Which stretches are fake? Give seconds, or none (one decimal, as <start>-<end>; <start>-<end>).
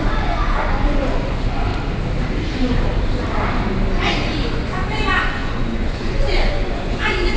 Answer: 0.0-1.7; 4.5-7.4